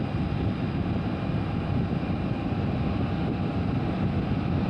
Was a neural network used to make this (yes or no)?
no